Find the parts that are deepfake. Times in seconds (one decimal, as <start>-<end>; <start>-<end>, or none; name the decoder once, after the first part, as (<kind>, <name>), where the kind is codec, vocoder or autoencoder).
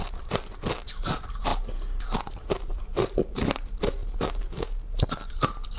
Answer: 0.0-1.5 (vocoder, BigVGAN v2); 2.3-4.0